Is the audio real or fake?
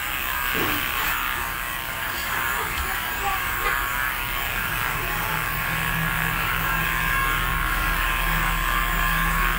fake